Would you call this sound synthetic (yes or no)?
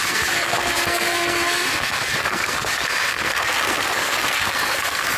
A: yes